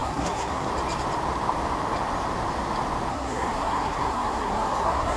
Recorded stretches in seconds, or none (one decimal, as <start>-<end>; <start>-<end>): 0.7-3.1